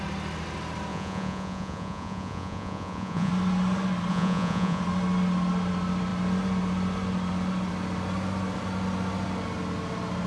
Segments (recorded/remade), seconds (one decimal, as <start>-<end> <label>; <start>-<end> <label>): 0.0-0.9 recorded; 0.9-3.3 remade; 3.3-4.1 recorded; 4.1-4.8 remade; 4.8-10.3 recorded